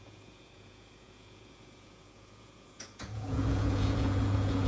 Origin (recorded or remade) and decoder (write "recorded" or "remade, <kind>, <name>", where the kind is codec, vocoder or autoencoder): remade, vocoder, Vocos